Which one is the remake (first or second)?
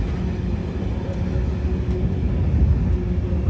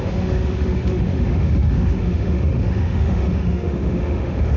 second